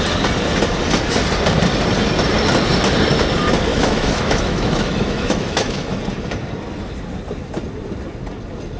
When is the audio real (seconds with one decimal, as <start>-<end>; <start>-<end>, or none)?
0.0-3.7; 6.0-8.8